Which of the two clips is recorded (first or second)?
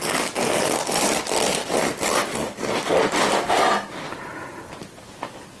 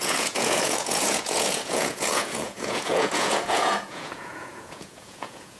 first